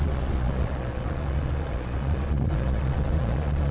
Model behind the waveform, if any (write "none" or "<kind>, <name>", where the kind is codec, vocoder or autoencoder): vocoder, Vocos